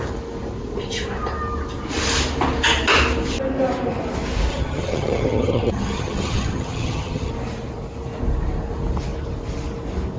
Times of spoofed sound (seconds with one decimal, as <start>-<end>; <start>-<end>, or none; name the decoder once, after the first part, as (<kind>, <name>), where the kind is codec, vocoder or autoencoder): 4.5-7.3 (vocoder, HiFi-GAN)